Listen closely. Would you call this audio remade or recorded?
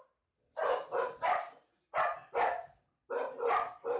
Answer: recorded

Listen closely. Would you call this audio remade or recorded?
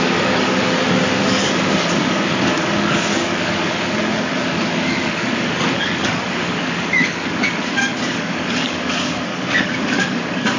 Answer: remade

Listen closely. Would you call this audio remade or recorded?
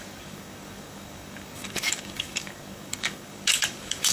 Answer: remade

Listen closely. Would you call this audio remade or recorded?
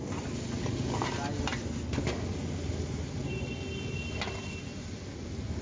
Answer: recorded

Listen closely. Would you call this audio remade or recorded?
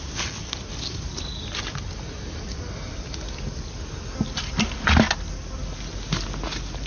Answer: recorded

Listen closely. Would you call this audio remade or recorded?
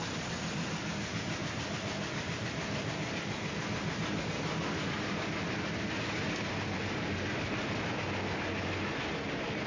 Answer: recorded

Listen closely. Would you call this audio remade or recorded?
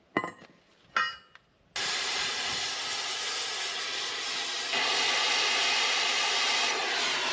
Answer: recorded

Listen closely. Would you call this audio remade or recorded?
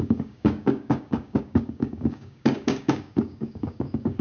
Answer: remade